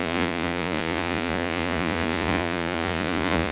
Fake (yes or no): yes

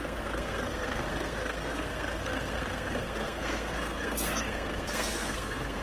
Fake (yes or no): yes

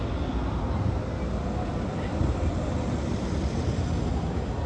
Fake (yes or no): no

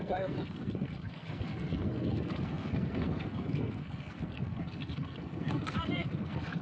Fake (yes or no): yes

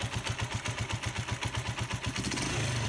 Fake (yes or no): no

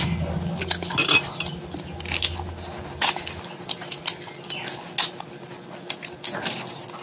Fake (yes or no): no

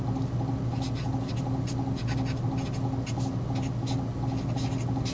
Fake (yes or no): no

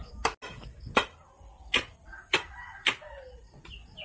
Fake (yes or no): no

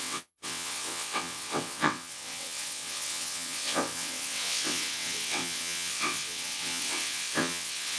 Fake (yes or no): yes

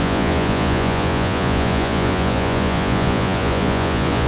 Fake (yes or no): yes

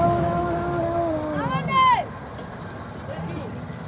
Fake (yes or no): no